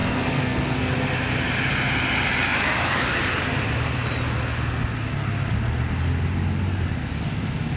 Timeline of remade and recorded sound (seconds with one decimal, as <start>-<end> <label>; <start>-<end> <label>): 0.0-0.9 remade; 0.9-7.8 recorded